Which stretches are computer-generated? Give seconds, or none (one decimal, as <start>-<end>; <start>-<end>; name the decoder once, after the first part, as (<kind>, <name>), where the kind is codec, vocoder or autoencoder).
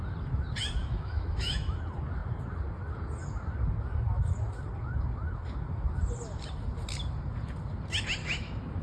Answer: 0.8-1.8 (autoencoder, DAC-VAE); 8.2-8.8